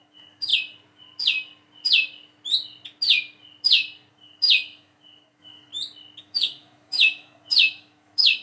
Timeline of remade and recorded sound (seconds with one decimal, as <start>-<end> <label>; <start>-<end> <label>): 0.0-0.5 remade; 0.5-4.1 recorded; 4.1-5.7 remade; 5.7-6.2 recorded; 6.2-8.4 remade